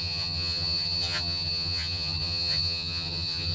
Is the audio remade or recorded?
remade